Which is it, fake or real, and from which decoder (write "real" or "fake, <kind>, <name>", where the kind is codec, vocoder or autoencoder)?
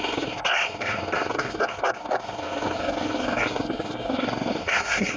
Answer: fake, codec, SNAC